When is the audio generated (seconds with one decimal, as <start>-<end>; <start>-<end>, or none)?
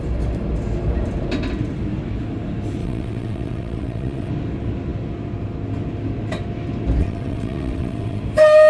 2.8-4.3; 7.0-8.2